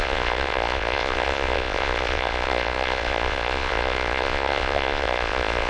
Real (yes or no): no